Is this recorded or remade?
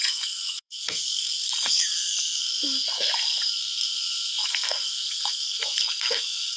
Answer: remade